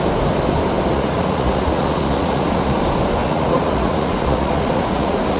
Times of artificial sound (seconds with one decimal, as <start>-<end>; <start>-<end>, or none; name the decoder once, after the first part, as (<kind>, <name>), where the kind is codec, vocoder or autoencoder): 0.9-2.8 (vocoder, Vocos); 3.2-5.4